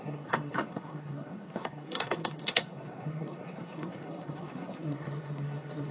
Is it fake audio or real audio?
fake